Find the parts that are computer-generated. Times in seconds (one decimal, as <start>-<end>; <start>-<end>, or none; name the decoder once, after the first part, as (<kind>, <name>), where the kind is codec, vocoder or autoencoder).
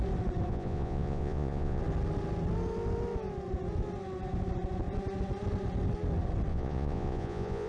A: 0.5-1.8 (vocoder, Vocos); 6.5-7.7